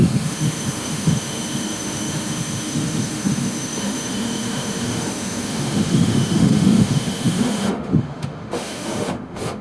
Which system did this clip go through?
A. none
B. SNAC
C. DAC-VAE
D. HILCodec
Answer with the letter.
C